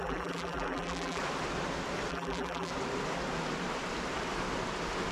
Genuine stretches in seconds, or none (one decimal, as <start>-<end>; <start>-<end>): 1.2-2.1; 2.7-5.1